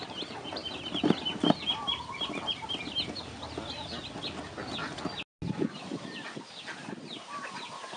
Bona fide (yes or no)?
yes